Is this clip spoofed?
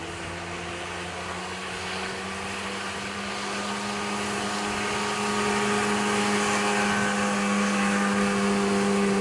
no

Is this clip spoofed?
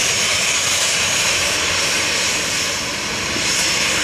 no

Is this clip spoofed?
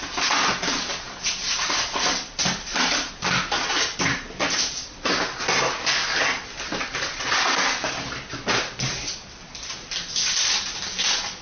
no